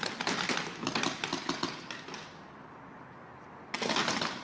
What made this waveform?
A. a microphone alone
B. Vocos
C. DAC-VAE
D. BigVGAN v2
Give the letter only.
A